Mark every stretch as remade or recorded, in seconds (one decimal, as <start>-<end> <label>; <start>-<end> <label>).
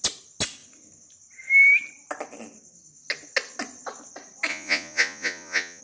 0.0-4.5 recorded; 4.5-5.8 remade